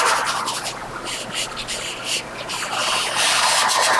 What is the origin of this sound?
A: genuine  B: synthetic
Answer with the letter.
A